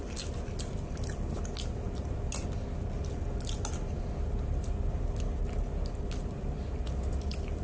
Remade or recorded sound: recorded